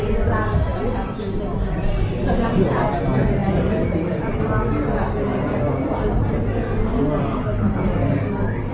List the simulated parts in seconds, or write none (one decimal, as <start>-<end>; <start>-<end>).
none